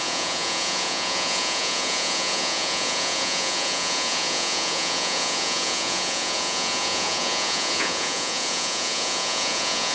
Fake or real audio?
fake